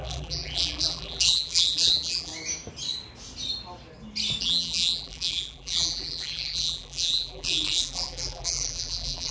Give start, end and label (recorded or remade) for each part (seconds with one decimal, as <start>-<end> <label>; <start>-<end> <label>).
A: 0.0-2.3 remade; 2.3-4.4 recorded; 4.4-9.3 remade